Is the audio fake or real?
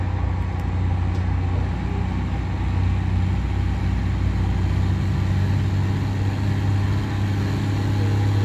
real